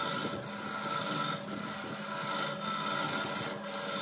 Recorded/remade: recorded